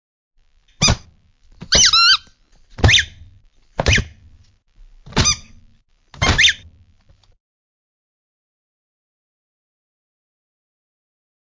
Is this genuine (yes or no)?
yes